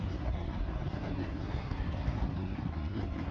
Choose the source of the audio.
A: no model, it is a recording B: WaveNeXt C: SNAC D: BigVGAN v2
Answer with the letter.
C